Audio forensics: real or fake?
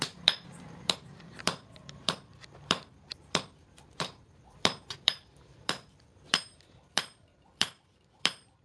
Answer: fake